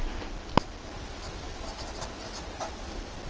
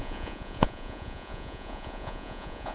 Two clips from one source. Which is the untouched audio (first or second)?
first